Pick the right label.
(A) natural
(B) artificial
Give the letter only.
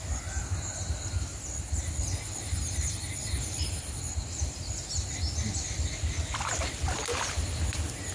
A